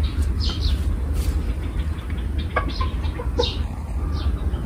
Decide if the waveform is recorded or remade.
recorded